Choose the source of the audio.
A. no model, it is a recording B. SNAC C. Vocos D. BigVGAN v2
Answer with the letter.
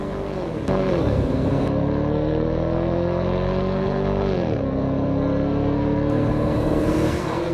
B